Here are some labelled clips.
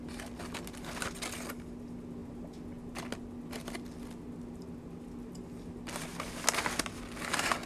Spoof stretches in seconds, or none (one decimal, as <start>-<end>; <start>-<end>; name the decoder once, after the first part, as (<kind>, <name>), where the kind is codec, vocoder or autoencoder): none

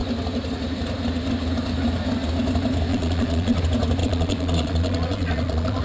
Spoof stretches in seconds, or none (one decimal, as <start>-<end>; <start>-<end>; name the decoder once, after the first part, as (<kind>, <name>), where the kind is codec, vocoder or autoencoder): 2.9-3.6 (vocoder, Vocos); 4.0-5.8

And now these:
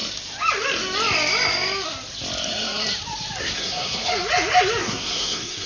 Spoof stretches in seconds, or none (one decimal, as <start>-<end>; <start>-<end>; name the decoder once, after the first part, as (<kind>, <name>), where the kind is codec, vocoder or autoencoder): 3.4-4.1 (codec, SNAC); 4.8-5.7

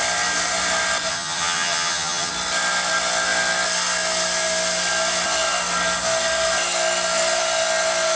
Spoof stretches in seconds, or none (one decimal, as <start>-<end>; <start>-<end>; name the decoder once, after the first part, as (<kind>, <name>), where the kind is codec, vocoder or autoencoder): 1.1-2.3 (vocoder, HiFi-GAN)